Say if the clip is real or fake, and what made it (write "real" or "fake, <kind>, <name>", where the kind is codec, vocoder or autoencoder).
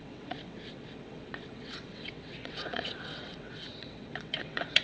fake, vocoder, WaveNeXt